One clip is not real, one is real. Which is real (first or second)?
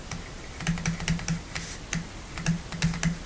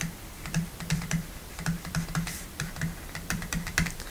first